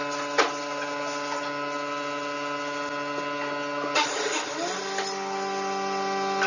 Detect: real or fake real